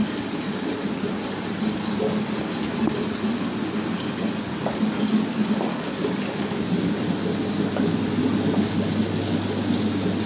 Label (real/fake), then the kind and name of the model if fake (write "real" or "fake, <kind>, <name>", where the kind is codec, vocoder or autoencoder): real